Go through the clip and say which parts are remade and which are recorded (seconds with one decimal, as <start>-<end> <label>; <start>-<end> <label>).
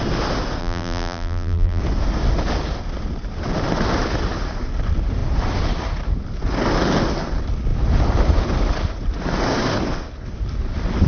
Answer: 0.0-0.6 recorded; 0.6-1.8 remade; 1.8-11.1 recorded